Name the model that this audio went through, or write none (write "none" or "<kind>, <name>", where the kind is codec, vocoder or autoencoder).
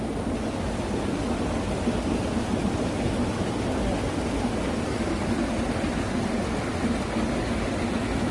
none